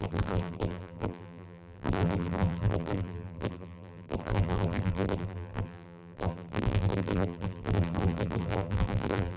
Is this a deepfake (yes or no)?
yes